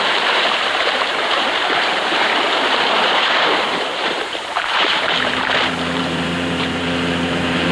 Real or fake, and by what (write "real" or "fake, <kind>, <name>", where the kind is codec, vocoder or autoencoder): fake, vocoder, BigVGAN v2